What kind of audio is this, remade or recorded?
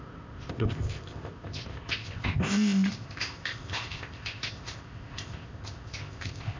remade